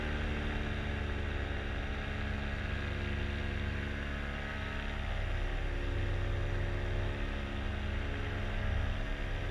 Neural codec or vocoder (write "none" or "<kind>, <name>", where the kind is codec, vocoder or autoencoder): none